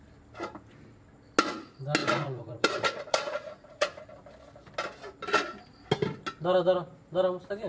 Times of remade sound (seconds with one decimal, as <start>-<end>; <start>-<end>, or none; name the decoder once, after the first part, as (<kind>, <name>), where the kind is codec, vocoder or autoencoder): 2.0-4.0 (vocoder, Vocos)